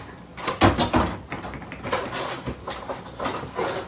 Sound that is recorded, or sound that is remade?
recorded